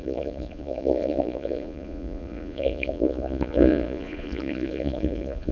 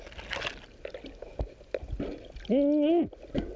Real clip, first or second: second